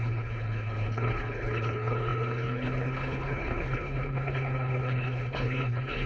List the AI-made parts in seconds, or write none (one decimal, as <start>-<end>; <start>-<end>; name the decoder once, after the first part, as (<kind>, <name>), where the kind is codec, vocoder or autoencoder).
0.0-6.1 (codec, HILCodec)